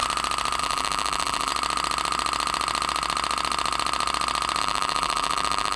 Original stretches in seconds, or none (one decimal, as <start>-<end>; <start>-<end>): 0.0-0.6; 1.5-4.6